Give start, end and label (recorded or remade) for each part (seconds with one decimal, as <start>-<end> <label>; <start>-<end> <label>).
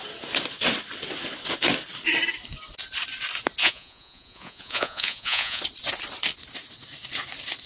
0.0-3.6 recorded; 3.6-5.6 remade; 5.6-7.7 recorded